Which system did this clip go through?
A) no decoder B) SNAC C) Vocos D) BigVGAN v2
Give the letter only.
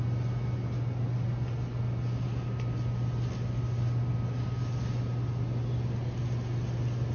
A